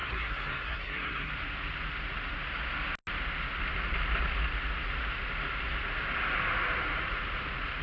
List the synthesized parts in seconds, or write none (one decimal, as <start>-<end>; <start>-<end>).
0.0-1.3